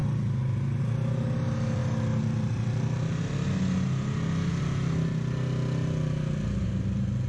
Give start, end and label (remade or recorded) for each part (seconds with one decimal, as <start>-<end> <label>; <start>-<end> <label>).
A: 0.0-7.3 recorded